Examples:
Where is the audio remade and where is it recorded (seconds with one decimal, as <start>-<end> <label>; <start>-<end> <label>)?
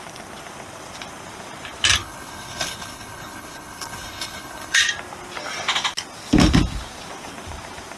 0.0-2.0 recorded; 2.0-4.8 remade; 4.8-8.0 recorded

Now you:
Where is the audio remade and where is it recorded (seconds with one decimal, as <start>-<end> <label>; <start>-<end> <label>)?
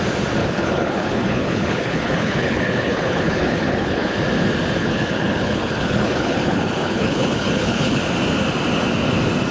0.0-0.4 recorded; 0.4-4.1 remade; 4.1-4.8 recorded; 4.8-8.0 remade; 8.0-9.5 recorded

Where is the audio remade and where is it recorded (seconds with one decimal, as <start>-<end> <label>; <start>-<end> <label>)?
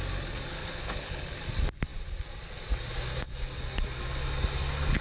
0.0-0.5 recorded; 0.5-1.2 remade; 1.2-5.0 recorded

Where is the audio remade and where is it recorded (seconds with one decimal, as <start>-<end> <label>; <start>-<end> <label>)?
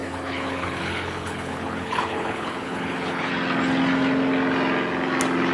0.0-3.3 remade; 3.3-5.5 recorded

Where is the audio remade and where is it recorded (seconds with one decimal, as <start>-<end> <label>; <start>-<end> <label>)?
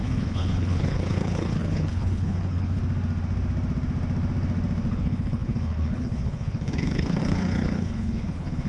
0.0-2.8 remade; 2.8-4.9 recorded; 4.9-8.7 remade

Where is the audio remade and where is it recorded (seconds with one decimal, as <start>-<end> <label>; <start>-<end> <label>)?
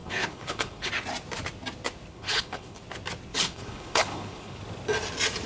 0.0-0.9 remade; 0.9-2.1 recorded; 2.1-2.8 remade; 2.8-3.3 recorded; 3.3-4.6 remade; 4.6-5.5 recorded